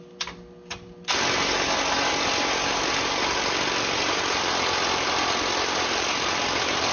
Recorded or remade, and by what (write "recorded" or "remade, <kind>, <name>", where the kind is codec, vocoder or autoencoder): recorded